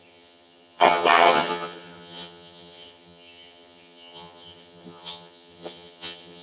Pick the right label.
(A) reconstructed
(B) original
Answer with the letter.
A